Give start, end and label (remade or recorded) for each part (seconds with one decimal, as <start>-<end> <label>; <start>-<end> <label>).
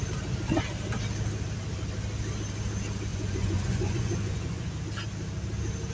0.0-3.1 recorded; 3.1-4.7 remade; 4.7-5.9 recorded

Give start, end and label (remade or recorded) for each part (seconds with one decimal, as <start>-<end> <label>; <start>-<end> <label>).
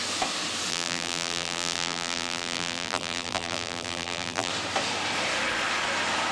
0.0-0.7 recorded; 0.7-4.5 remade; 4.5-6.3 recorded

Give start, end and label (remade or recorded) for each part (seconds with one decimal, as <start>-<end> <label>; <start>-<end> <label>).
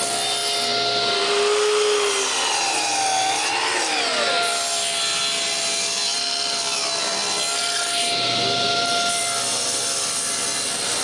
0.0-11.0 recorded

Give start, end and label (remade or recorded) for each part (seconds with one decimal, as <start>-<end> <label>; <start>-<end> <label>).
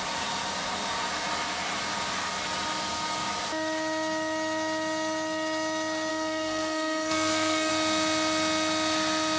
0.0-6.1 recorded; 6.1-7.7 remade; 7.7-9.4 recorded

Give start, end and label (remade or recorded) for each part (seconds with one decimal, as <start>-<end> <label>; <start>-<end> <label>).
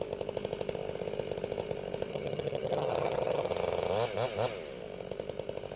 0.0-2.1 recorded; 2.1-3.5 remade; 3.5-5.8 recorded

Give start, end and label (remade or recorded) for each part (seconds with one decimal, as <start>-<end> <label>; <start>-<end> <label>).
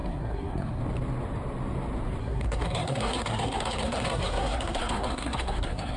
0.0-0.8 remade; 0.8-2.2 recorded; 2.2-6.0 remade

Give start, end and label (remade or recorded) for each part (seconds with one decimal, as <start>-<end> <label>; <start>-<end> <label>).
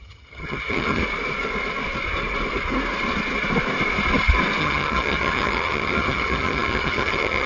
0.0-1.0 remade; 1.0-4.6 recorded; 4.6-7.5 remade